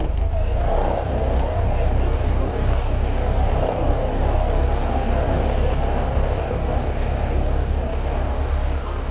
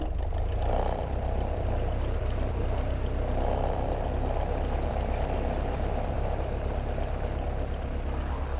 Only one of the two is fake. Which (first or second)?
first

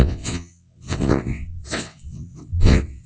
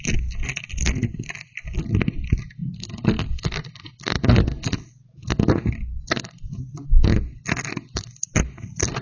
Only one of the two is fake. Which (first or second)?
first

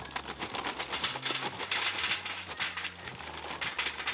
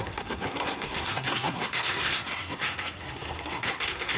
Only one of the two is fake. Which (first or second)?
second